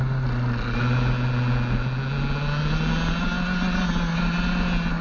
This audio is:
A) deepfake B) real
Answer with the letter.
B